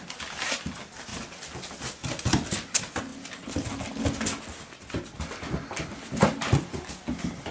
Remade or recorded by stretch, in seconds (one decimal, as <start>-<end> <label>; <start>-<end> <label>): 0.0-7.5 recorded

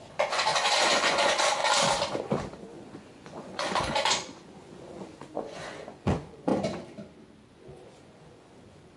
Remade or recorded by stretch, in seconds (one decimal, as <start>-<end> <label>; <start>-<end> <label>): 0.0-1.6 remade; 1.6-2.6 recorded; 2.6-6.5 remade; 6.5-7.5 recorded; 7.5-9.0 remade

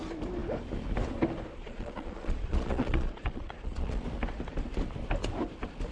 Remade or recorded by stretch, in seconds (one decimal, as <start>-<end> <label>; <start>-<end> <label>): 0.0-1.6 recorded; 1.6-4.0 remade; 4.0-5.9 recorded